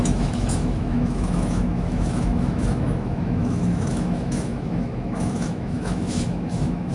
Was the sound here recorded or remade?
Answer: remade